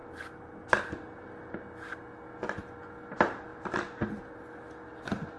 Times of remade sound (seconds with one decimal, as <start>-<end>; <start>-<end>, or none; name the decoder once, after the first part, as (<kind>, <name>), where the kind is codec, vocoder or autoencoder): none